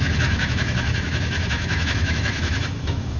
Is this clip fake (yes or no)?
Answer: yes